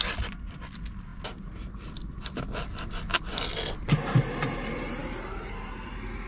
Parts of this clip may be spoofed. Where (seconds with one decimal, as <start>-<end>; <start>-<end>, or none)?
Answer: none